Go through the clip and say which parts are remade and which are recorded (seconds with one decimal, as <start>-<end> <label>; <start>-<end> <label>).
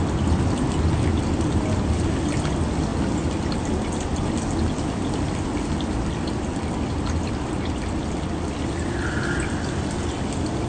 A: 0.0-10.7 recorded